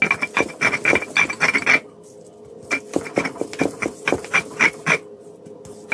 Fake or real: real